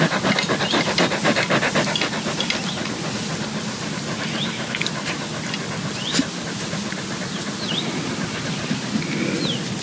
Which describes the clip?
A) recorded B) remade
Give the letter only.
A